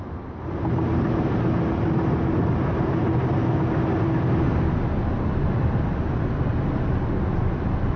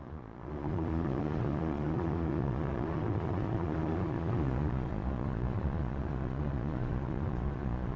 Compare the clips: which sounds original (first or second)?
first